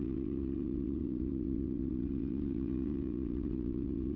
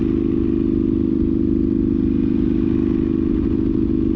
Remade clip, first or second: first